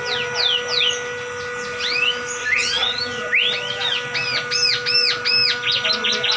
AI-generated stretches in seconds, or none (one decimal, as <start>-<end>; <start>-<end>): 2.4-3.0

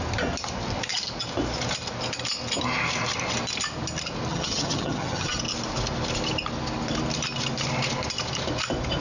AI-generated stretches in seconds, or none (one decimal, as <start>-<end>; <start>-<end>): 4.3-5.4

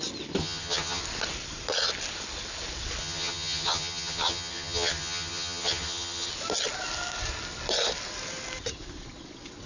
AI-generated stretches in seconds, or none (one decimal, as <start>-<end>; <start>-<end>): 0.4-1.0; 3.0-6.3